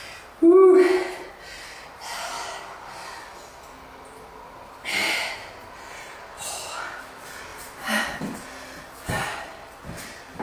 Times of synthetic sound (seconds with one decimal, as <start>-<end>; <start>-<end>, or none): 7.5-8.2